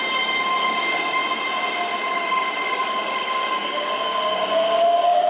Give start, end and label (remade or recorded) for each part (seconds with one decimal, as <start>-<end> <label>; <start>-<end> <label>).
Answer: 0.0-1.2 remade; 1.2-2.1 recorded; 2.1-5.3 remade